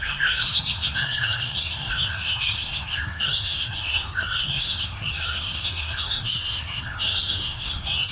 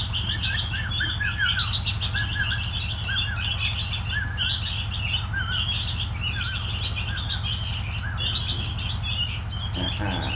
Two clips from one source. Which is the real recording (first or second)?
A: second